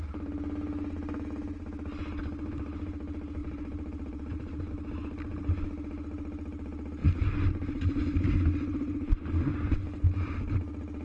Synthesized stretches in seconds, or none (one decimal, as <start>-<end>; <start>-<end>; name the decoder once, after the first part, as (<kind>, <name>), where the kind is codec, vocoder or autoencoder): 3.4-4.7 (vocoder, BigVGAN v2); 7.0-8.0